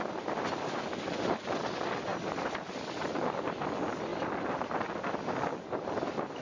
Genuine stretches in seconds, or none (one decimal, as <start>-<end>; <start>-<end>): 0.0-2.1; 2.7-6.4